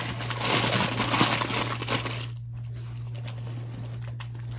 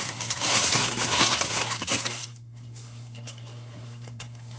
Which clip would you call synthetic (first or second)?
second